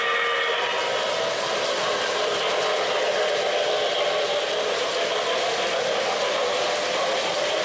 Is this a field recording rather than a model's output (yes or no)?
yes